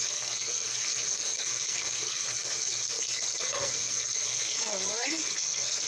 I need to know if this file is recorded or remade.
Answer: remade